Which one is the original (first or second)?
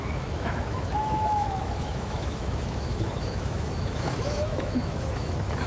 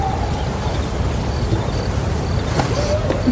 second